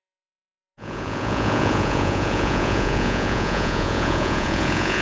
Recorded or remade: remade